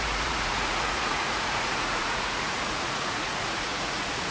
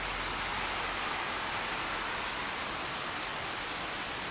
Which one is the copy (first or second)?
first